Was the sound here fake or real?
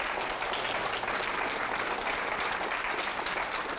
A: real